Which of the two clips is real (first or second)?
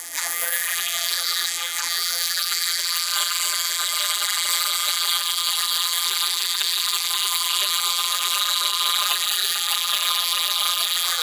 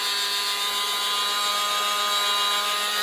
second